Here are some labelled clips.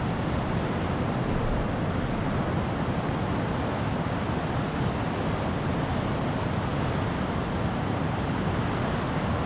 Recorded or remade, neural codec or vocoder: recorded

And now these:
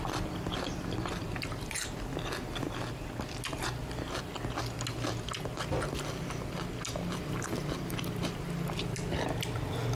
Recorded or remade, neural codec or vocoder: recorded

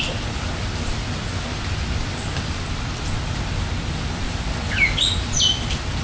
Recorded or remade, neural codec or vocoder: recorded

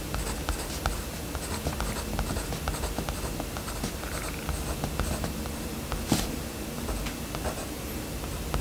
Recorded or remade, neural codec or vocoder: recorded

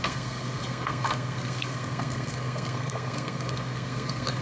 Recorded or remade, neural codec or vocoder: remade, codec, SNAC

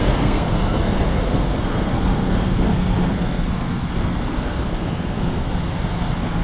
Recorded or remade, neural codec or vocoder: remade, codec, SNAC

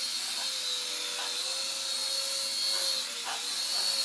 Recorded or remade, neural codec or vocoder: recorded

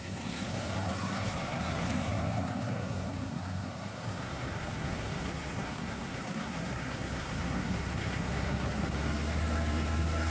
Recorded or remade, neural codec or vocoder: remade, codec, SNAC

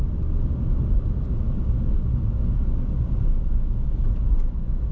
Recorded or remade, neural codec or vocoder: recorded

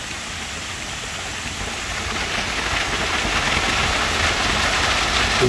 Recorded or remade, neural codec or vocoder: recorded